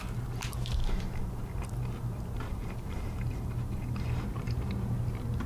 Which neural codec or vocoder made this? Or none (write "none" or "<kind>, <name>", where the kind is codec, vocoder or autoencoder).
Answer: vocoder, BigVGAN v2